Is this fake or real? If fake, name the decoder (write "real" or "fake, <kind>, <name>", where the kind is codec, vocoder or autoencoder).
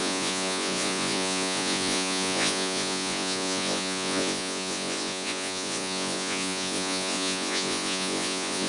fake, vocoder, Vocos